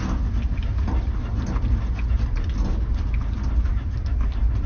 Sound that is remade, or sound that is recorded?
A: recorded